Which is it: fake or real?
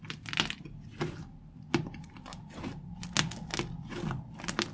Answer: real